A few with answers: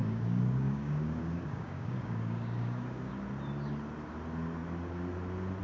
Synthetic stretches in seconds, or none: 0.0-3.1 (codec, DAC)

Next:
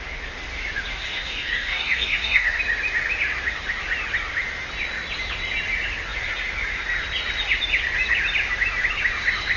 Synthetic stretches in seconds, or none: 0.9-2.6 (codec, DAC)

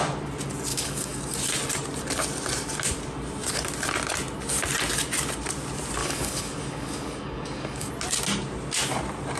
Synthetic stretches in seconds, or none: 0.7-1.2 (codec, DAC); 6.0-7.9

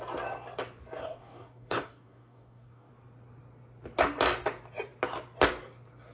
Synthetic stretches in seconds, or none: 1.0-2.9 (codec, DAC)

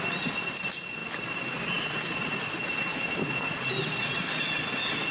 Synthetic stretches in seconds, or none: none

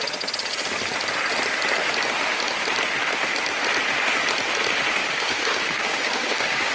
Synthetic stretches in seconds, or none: 5.0-6.7 (codec, DAC)